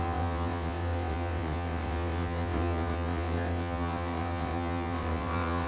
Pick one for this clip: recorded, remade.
remade